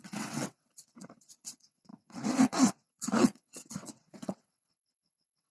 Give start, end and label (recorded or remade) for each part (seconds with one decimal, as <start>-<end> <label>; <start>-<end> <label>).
0.0-5.5 remade